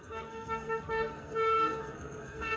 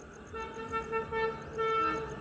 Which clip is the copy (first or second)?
first